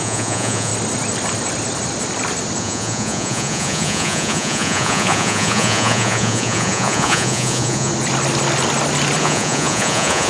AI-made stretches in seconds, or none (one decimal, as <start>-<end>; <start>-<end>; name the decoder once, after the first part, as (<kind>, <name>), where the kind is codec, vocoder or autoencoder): 0.0-0.7 (vocoder, Vocos); 2.6-7.9; 9.2-10.3